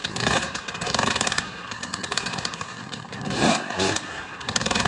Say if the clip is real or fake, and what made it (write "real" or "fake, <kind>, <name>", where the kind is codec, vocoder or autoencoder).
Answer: fake, codec, SNAC